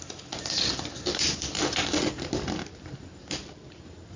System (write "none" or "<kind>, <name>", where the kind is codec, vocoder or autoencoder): vocoder, BigVGAN v2